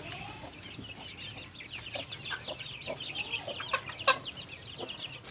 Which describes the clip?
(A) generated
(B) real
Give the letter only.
B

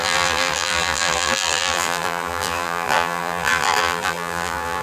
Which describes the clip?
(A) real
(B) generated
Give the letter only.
B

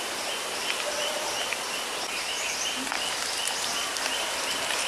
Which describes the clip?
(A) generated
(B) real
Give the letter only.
B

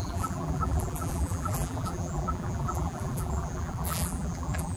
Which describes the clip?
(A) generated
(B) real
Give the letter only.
A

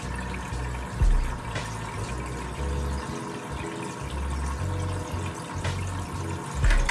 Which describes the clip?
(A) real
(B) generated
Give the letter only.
A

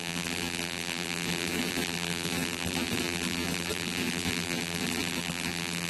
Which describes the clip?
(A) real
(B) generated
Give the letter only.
B